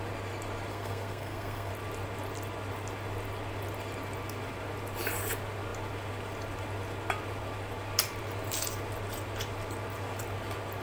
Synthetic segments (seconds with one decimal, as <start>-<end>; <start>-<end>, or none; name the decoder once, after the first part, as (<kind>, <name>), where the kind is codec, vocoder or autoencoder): 0.7-1.7 (codec, SNAC)